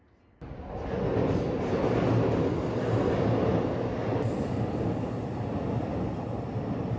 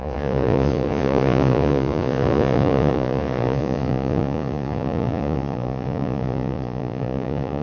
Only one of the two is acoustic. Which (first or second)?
first